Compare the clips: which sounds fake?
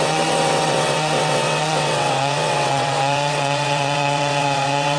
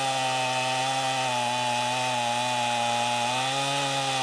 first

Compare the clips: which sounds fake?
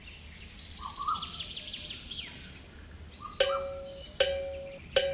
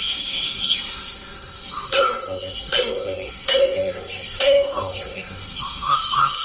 second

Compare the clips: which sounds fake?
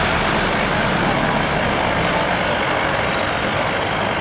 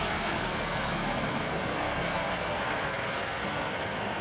second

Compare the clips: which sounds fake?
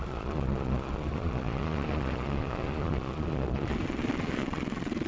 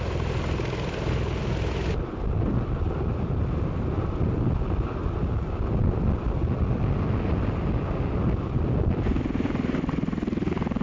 first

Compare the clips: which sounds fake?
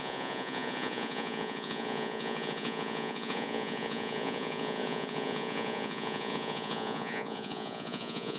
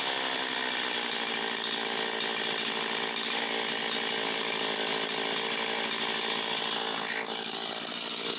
first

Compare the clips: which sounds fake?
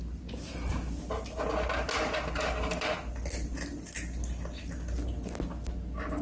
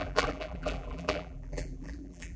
second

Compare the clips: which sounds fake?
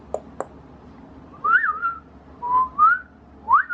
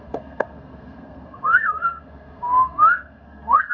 second